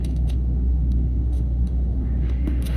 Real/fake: fake